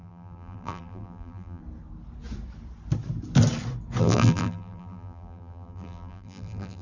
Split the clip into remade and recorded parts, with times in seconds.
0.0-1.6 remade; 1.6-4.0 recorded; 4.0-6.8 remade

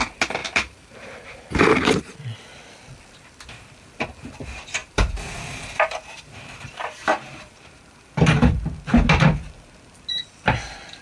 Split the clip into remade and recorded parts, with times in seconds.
0.0-0.4 recorded; 0.4-2.2 remade; 2.2-4.8 recorded; 4.8-8.1 remade; 8.1-11.0 recorded

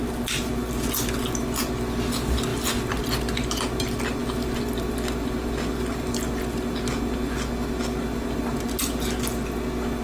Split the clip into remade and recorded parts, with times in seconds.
0.0-10.0 recorded

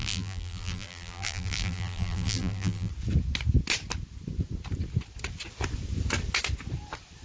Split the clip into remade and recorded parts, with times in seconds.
0.0-2.9 remade; 2.9-7.2 recorded

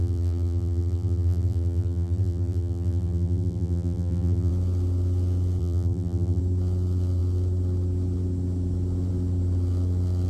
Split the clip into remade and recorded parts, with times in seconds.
0.0-4.5 remade; 4.5-5.6 recorded; 5.6-6.4 remade; 6.4-10.3 recorded

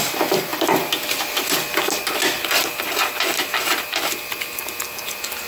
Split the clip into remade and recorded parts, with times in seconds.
0.0-5.5 recorded